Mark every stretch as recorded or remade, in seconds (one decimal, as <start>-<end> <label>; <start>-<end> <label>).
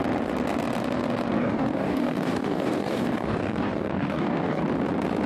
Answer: 0.0-1.4 recorded; 1.4-4.6 remade; 4.6-5.3 recorded